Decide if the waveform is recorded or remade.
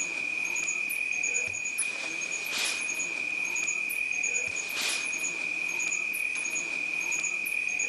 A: recorded